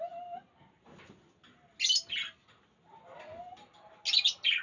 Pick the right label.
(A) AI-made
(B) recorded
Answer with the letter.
B